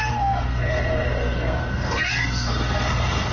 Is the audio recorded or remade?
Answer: remade